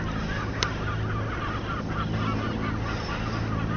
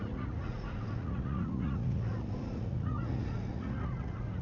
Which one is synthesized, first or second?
second